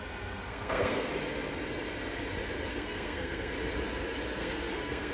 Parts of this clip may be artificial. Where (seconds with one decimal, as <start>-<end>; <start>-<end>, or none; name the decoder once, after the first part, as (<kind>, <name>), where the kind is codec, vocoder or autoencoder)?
0.5-1.1 (codec, SNAC); 2.7-3.5; 4.4-5.1